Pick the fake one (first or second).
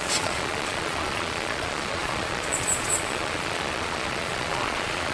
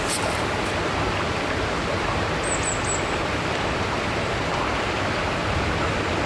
first